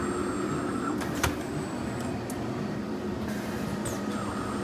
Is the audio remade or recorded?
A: recorded